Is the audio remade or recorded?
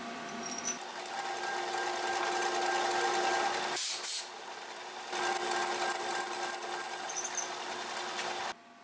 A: recorded